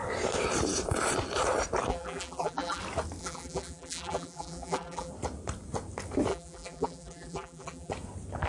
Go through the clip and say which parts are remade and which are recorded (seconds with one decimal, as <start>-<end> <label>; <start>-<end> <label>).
0.0-1.9 recorded; 1.9-2.8 remade; 2.8-3.2 recorded; 3.2-5.1 remade; 5.1-6.3 recorded; 6.3-7.9 remade; 7.9-8.5 recorded